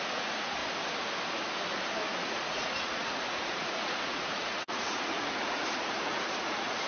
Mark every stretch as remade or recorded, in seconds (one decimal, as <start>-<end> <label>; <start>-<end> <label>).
0.0-0.6 remade; 0.6-2.2 recorded; 2.2-6.9 remade